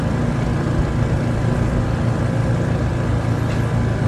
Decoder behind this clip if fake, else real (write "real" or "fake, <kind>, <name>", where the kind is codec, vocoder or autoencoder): real